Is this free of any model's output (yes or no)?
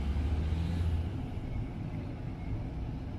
yes